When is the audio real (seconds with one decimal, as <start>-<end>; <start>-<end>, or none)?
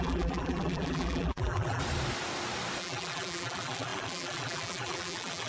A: 1.8-2.8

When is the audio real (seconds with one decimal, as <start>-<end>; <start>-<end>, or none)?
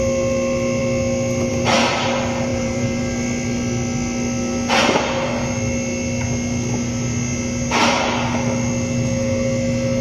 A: 0.0-2.5; 3.0-10.0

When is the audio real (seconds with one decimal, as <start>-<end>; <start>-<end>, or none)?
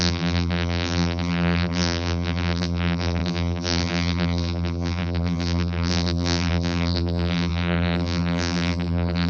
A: none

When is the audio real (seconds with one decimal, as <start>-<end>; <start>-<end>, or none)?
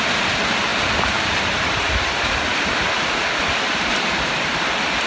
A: 2.5-3.4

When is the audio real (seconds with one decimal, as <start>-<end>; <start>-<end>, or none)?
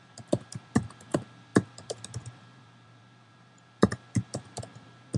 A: none